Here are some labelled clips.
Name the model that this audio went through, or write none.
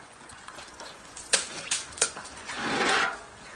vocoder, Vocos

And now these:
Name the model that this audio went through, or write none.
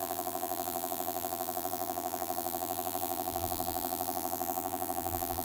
vocoder, BigVGAN v2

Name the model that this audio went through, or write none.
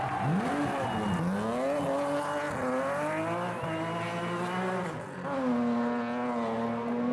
none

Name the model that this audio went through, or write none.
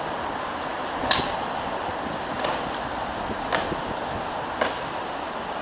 none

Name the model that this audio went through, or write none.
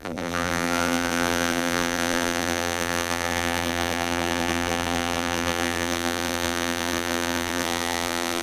vocoder, BigVGAN v2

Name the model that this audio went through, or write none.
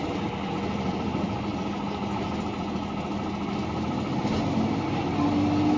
none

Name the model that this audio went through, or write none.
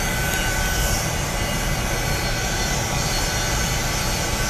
none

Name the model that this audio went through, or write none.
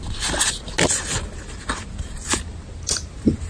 none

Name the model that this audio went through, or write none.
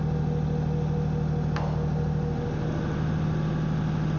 none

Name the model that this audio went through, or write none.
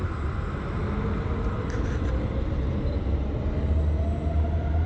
none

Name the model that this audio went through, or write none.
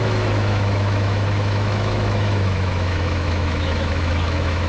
autoencoder, DAC-VAE